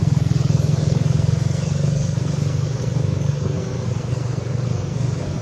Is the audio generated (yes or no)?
yes